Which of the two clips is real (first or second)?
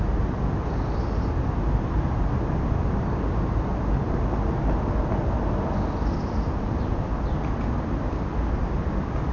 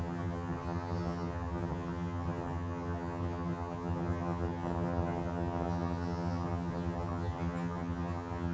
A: first